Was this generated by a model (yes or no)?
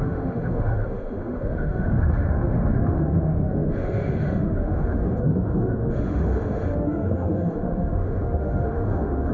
yes